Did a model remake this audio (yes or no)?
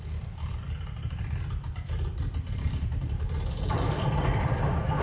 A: yes